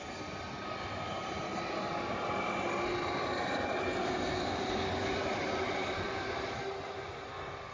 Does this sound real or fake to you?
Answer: real